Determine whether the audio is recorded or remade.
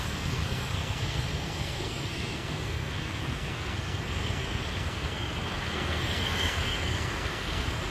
remade